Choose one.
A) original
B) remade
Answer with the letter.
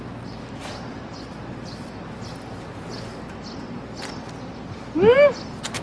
A